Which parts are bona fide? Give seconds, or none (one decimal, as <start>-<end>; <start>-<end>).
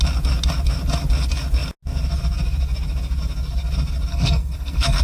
0.0-4.1